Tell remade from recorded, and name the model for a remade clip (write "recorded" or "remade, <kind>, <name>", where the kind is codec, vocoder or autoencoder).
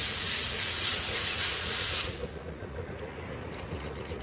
remade, vocoder, Vocos